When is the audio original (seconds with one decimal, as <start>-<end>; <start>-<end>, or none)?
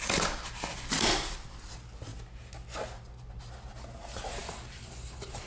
0.0-4.4